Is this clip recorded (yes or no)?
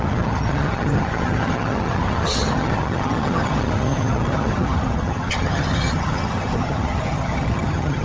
no